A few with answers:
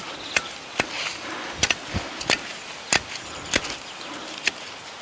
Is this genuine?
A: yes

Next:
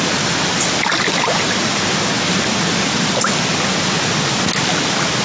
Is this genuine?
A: yes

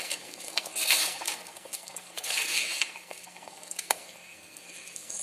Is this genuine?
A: no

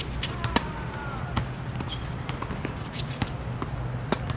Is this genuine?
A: yes